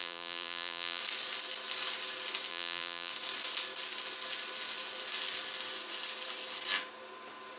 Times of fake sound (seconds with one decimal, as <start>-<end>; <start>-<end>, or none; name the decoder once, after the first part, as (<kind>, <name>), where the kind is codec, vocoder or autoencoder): 0.0-1.0 (vocoder, BigVGAN v2); 2.5-3.1